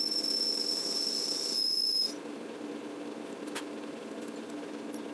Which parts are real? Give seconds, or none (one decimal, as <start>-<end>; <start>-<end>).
0.0-5.1